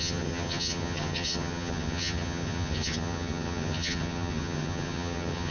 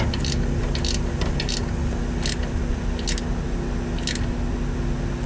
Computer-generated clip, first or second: first